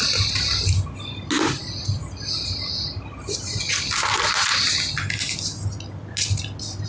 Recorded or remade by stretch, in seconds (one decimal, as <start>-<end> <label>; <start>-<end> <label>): 0.0-6.9 recorded